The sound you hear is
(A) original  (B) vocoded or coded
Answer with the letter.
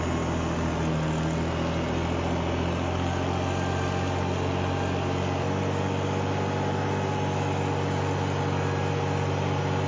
A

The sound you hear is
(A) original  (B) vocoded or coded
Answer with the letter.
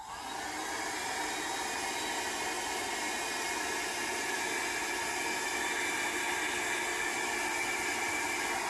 A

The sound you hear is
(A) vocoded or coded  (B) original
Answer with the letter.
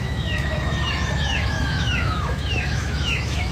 A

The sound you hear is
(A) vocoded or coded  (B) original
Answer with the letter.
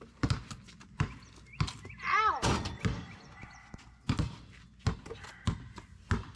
B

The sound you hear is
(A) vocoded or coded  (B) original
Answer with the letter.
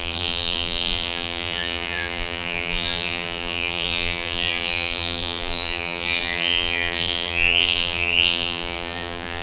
A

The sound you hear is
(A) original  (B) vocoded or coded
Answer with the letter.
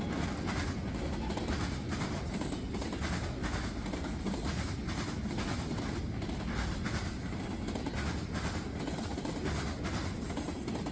A